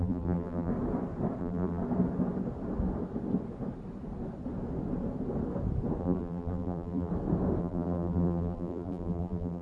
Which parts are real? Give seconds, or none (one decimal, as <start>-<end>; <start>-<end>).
0.7-1.4; 1.8-6.0; 7.1-7.6